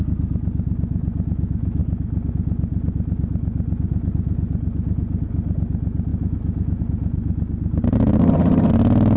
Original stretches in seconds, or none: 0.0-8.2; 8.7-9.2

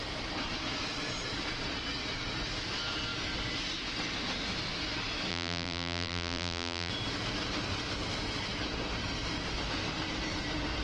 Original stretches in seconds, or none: 0.0-5.3; 6.9-10.8

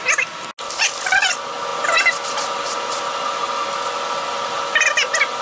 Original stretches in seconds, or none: 0.0-5.4